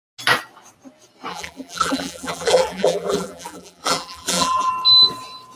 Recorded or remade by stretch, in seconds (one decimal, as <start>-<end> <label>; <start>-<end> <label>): 0.0-1.3 recorded; 1.3-4.7 remade; 4.7-5.6 recorded